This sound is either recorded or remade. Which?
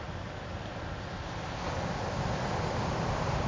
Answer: recorded